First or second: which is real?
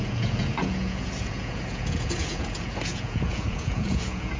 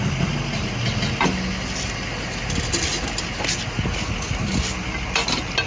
second